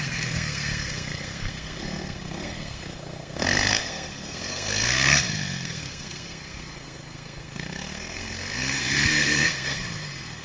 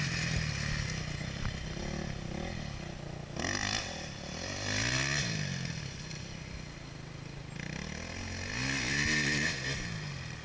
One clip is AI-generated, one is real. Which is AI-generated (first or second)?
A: first